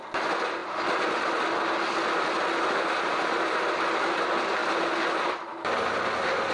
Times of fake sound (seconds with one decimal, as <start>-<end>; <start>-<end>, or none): none